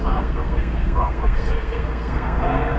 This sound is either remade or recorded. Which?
remade